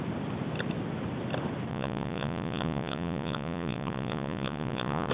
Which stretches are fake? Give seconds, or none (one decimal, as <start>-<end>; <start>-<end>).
1.7-5.1